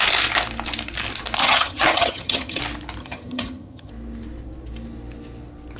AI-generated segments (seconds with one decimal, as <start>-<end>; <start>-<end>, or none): 1.4-2.6; 3.0-3.9